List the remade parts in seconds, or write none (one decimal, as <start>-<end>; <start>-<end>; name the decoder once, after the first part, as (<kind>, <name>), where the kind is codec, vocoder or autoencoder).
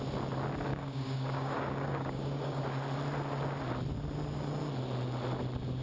0.7-2.6 (codec, DAC)